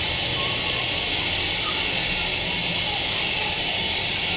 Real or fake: real